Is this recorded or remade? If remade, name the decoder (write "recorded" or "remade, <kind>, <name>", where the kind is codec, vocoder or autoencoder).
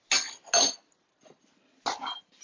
recorded